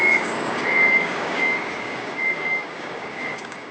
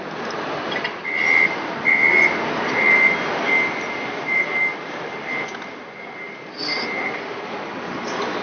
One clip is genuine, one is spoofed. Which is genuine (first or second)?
second